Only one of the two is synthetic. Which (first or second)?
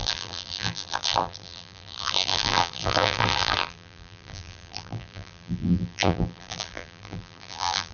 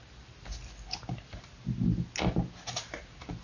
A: first